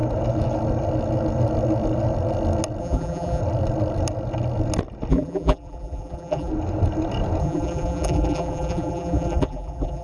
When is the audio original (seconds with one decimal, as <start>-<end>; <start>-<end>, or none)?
0.0-2.8; 3.4-5.1; 6.5-7.4